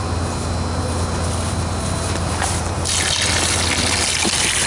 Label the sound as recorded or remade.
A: recorded